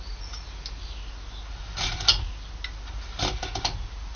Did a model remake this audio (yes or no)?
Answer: no